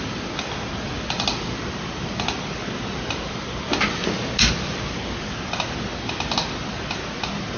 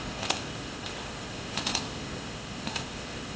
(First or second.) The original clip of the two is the first